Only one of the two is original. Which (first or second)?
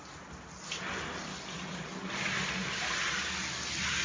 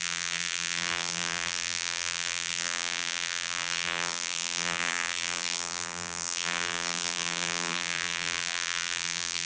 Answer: first